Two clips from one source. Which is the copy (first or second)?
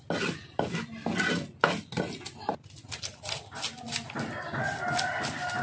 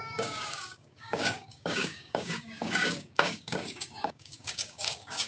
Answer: second